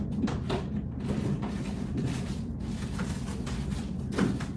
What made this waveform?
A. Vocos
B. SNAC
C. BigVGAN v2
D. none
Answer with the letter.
D